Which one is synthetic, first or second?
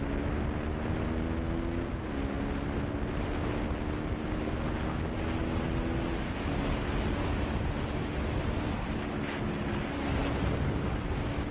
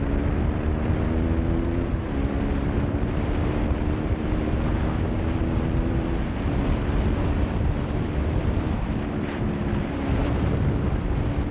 second